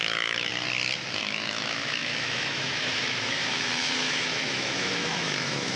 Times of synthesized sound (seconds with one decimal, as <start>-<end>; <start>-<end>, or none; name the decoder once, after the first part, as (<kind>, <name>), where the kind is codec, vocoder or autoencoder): 0.0-0.5 (autoencoder, DAC-VAE); 1.2-5.8